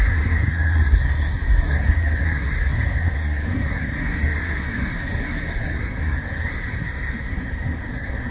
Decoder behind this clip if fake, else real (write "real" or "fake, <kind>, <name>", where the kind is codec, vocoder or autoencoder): fake, codec, SNAC